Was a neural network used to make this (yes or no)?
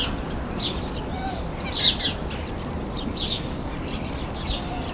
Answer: no